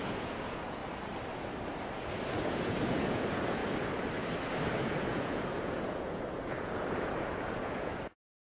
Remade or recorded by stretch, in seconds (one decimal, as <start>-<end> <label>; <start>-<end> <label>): 0.0-0.8 remade; 0.8-2.4 recorded; 2.4-3.6 remade; 3.6-4.8 recorded; 4.8-8.5 remade